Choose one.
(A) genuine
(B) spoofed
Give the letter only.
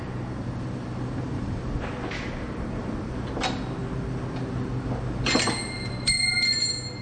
A